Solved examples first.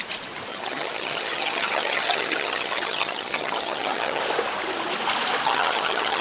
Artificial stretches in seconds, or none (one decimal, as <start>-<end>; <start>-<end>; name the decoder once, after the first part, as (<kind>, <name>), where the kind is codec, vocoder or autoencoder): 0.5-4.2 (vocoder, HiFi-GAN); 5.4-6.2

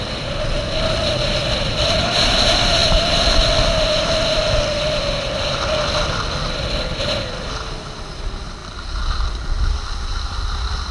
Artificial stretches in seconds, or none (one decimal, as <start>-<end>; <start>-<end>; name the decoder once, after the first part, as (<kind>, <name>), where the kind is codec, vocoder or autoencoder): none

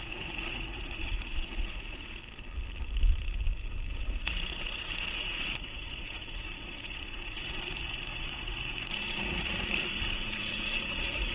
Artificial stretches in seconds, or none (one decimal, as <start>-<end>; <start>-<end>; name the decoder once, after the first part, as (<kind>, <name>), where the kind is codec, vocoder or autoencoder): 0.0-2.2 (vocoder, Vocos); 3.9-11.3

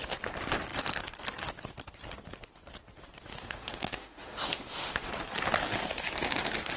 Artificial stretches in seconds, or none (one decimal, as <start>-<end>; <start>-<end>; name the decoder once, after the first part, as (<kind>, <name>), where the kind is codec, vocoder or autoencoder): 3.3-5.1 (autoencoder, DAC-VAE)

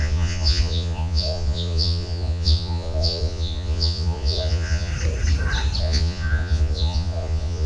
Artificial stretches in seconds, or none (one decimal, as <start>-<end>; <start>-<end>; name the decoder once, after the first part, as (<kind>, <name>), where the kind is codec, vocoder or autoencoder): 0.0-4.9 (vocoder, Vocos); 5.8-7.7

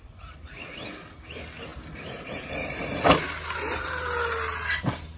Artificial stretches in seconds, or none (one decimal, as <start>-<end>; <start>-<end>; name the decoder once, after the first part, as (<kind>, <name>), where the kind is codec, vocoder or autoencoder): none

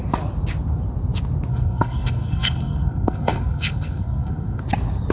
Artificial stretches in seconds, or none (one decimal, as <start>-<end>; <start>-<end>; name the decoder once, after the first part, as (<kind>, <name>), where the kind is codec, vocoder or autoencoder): 1.5-4.6 (codec, SNAC)

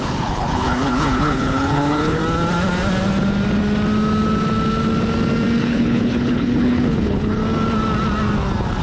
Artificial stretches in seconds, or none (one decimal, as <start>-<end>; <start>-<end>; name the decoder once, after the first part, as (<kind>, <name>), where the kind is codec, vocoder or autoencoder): 0.0-2.2 (codec, HILCodec); 5.6-7.4